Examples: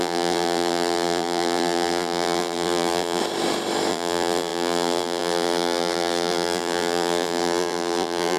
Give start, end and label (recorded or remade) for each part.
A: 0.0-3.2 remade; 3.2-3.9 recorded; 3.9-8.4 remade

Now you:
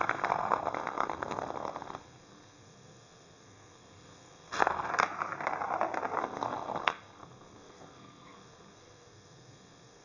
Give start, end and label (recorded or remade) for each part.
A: 0.0-4.9 remade; 4.9-6.2 recorded; 6.2-10.0 remade

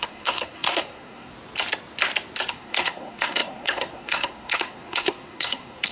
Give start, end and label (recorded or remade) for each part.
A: 0.0-1.3 remade; 1.3-2.5 recorded; 2.5-5.9 remade

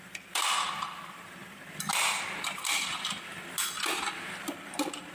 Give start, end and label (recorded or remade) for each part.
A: 0.0-5.1 recorded

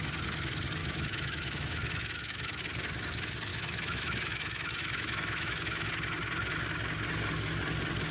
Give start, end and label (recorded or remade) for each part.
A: 0.0-0.8 recorded; 0.8-2.6 remade; 2.6-3.5 recorded; 3.5-5.9 remade; 5.9-8.1 recorded

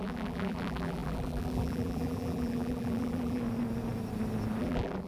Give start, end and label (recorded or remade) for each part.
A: 0.0-3.4 remade; 3.4-4.6 recorded; 4.6-5.1 remade

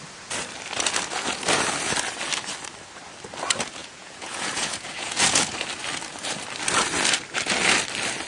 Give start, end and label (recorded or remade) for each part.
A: 0.0-3.8 recorded; 3.8-5.2 remade; 5.2-8.3 recorded